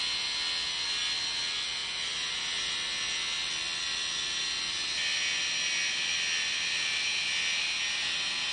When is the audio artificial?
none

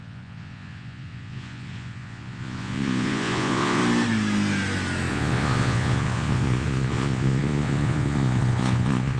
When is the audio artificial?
0.0-3.8 (vocoder, Vocos); 5.1-9.2

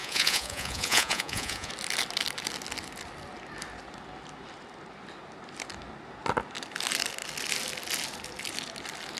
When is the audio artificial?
0.0-1.7 (vocoder, Vocos)

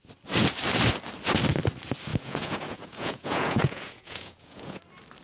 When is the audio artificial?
2.1-4.8 (vocoder, Vocos)

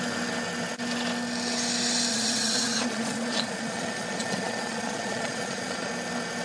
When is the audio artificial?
2.1-5.9 (vocoder, Vocos)